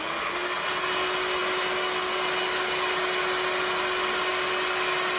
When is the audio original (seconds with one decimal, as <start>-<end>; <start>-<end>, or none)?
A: 0.0-5.2